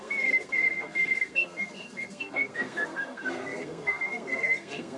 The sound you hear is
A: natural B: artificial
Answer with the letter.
B